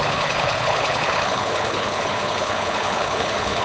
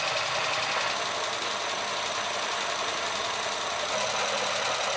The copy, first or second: first